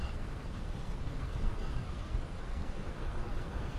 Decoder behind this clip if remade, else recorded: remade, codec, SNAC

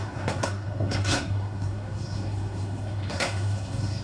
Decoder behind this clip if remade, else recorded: remade, codec, SNAC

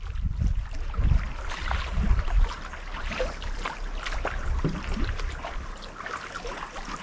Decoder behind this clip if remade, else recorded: recorded